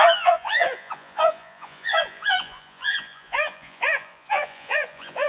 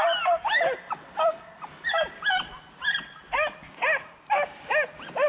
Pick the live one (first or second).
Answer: second